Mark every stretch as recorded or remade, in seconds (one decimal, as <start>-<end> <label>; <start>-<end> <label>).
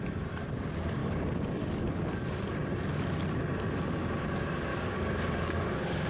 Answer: 0.0-1.0 recorded; 1.0-1.8 remade; 1.8-4.7 recorded; 4.7-6.1 remade